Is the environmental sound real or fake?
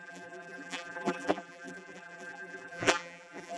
fake